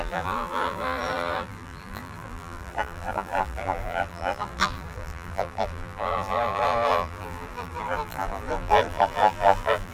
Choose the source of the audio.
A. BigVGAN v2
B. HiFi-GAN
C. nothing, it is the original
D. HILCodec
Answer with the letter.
A